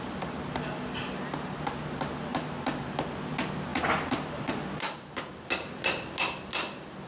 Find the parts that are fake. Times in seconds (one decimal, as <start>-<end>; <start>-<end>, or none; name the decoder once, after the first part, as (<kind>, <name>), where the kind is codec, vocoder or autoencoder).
2.3-2.8 (vocoder, BigVGAN v2); 3.7-4.5